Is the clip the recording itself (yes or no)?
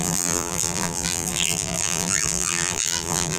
no